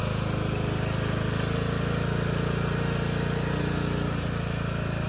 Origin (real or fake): real